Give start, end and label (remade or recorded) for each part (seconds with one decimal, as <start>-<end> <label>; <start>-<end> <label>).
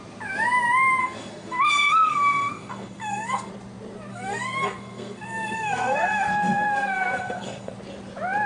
0.0-1.0 recorded; 1.0-3.5 remade; 3.5-4.1 recorded; 4.1-7.7 remade; 7.7-8.5 recorded